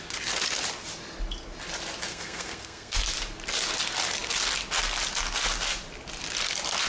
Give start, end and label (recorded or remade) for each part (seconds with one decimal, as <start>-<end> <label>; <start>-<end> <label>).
0.0-2.1 recorded; 2.1-3.0 remade; 3.0-6.9 recorded